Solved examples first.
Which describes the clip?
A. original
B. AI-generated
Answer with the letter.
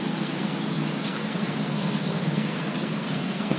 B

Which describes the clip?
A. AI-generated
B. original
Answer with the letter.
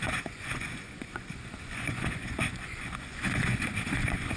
A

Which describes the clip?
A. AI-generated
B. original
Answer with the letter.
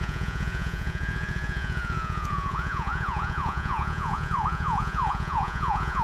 A